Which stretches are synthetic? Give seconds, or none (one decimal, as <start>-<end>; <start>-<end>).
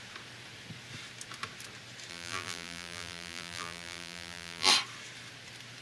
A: 2.1-4.7